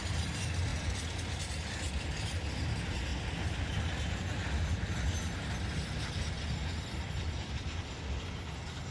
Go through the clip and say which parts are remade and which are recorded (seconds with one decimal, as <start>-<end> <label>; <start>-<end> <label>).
0.0-8.9 recorded